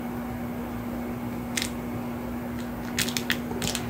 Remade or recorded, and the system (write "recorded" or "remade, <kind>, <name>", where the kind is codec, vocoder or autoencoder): recorded